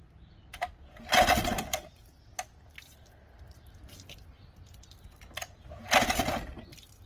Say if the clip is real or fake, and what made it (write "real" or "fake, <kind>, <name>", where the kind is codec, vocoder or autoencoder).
real